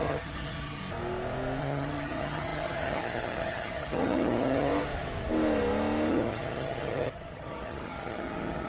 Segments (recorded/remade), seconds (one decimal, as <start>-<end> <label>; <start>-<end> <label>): 0.0-0.8 remade; 0.8-1.6 recorded; 1.6-4.7 remade; 4.7-6.1 recorded; 6.1-8.7 remade